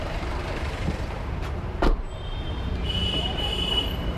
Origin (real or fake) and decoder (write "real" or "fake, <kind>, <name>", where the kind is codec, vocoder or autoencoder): fake, vocoder, BigVGAN v2